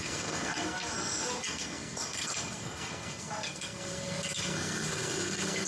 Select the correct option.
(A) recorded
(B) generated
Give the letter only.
B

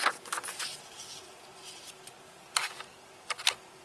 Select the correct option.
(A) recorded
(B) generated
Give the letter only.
A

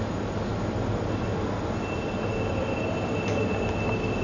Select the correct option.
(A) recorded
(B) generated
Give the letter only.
A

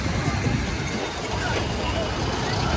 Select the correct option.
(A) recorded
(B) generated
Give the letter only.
A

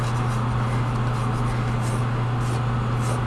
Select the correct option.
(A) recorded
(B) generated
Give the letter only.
A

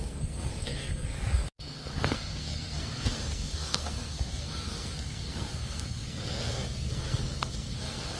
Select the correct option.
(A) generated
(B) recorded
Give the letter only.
A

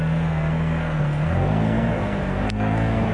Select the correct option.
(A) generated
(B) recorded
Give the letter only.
A